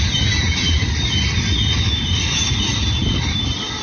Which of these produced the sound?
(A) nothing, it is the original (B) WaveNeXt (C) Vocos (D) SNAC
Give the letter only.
A